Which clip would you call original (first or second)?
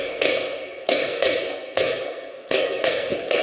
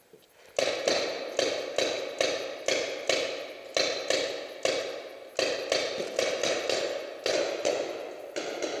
second